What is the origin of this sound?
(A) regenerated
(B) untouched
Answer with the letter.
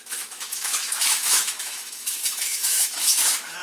A